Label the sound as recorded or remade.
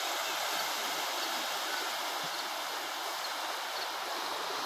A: recorded